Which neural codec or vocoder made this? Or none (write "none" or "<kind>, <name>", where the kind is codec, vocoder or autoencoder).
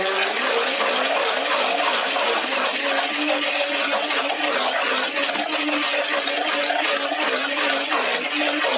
none